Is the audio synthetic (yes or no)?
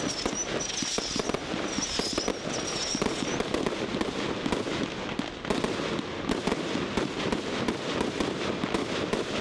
no